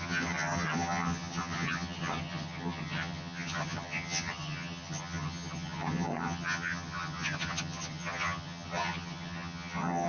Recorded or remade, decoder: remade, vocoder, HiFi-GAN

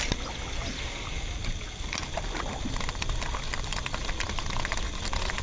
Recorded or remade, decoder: recorded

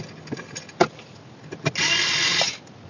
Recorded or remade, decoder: recorded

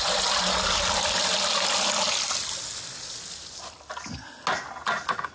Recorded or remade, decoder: recorded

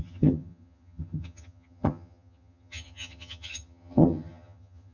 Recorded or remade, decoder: remade, vocoder, HiFi-GAN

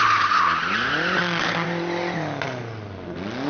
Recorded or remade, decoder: recorded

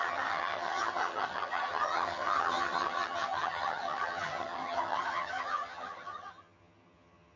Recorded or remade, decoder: remade, vocoder, HiFi-GAN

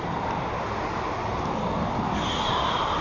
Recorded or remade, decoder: recorded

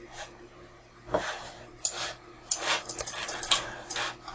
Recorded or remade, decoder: recorded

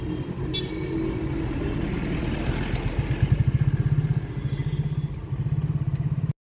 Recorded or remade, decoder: recorded